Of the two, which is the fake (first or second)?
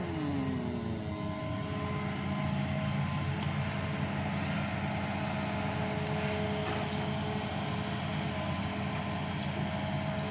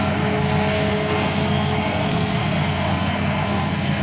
second